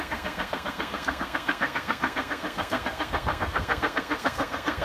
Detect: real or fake fake